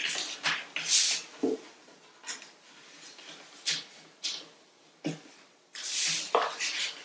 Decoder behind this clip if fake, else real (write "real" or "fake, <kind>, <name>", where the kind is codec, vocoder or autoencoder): real